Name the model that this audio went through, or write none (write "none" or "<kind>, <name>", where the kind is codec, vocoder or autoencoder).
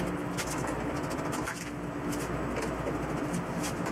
none